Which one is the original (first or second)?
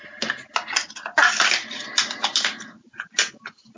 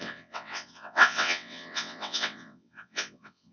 first